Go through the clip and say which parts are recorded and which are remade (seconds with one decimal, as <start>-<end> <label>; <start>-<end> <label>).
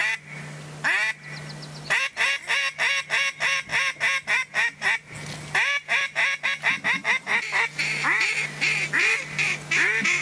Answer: 0.0-10.2 recorded